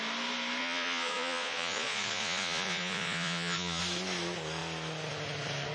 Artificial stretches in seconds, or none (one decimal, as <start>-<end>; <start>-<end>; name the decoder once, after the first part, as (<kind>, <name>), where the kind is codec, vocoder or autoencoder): 0.6-3.8 (vocoder, Vocos)